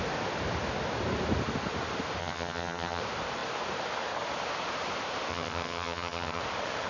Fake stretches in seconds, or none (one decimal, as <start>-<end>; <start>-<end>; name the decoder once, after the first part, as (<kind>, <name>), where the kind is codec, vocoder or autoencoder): 2.2-3.0 (vocoder, HiFi-GAN); 5.3-6.4